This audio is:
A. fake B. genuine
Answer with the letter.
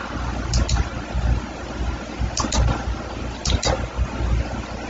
B